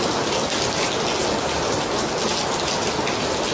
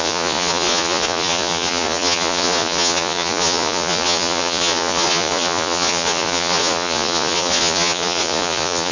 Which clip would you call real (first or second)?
first